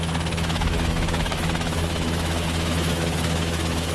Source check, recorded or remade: remade